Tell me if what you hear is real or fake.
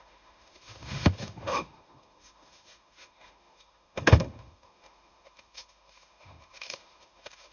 fake